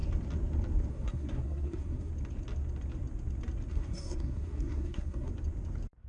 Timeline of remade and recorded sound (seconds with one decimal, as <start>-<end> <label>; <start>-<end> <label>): 0.0-0.9 recorded; 0.9-2.1 remade; 2.1-3.7 recorded; 3.7-5.3 remade; 5.3-6.1 recorded